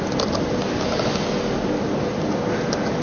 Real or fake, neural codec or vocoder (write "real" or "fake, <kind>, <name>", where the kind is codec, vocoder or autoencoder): real